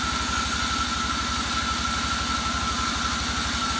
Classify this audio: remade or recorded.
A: recorded